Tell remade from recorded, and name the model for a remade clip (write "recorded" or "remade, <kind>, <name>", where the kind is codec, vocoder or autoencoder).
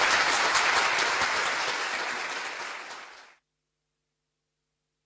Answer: recorded